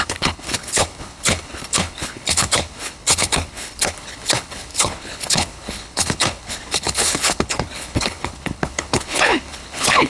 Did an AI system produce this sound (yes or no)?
yes